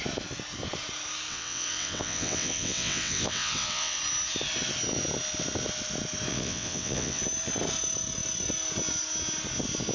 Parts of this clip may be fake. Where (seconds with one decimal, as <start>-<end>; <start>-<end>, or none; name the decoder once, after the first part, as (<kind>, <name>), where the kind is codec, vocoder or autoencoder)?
1.3-4.0 (vocoder, WaveNeXt); 6.3-7.2